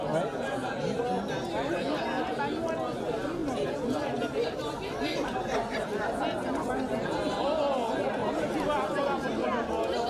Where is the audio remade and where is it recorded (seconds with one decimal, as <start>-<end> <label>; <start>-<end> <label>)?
0.0-10.1 recorded